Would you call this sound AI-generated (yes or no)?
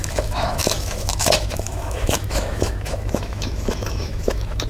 yes